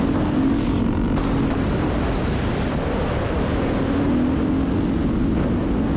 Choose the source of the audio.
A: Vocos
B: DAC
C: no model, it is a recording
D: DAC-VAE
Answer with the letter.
C